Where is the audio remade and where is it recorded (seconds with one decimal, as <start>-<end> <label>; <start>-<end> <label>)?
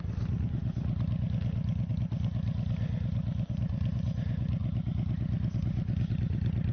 0.0-6.7 recorded